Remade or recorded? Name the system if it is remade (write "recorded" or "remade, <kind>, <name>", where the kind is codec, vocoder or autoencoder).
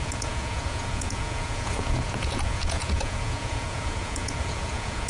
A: remade, vocoder, Vocos